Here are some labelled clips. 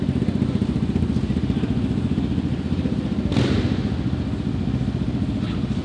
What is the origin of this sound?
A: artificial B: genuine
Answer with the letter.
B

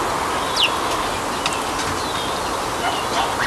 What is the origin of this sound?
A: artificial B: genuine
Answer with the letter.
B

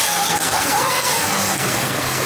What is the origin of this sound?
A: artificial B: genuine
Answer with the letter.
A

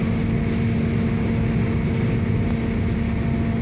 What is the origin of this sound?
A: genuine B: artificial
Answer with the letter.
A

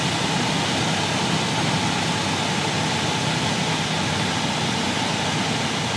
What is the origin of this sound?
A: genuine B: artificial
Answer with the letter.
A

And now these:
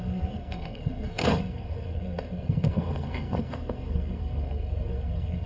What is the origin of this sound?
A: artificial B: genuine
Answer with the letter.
A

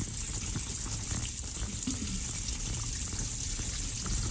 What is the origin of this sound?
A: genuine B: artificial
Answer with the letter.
A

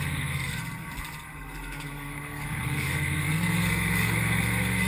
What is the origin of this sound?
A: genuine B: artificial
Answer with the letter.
B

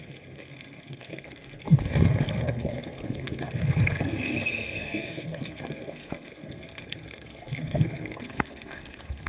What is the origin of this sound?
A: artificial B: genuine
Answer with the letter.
A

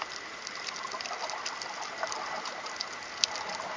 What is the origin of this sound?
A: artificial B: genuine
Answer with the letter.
B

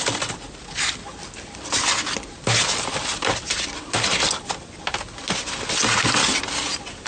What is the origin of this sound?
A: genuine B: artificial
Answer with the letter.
A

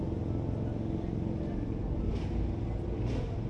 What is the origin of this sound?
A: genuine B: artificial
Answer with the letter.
A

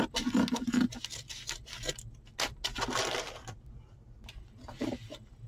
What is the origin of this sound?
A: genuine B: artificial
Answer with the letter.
A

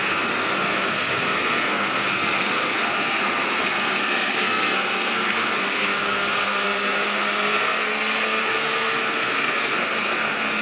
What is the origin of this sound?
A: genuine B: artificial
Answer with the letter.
B